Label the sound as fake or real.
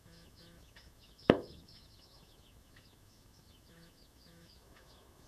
fake